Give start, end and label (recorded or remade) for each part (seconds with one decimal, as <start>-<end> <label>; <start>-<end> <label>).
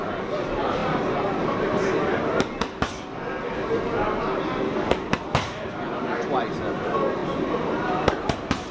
0.0-0.8 remade; 0.8-3.4 recorded; 3.4-8.7 remade